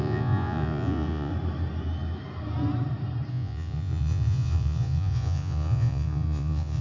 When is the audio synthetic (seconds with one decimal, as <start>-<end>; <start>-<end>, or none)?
0.0-1.3; 3.3-6.8